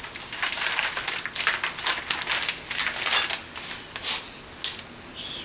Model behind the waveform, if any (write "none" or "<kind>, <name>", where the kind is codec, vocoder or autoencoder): none